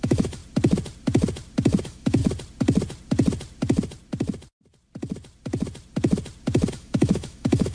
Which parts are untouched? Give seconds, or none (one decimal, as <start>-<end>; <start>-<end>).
0.4-1.8; 2.2-6.7